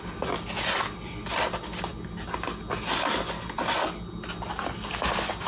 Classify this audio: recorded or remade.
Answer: recorded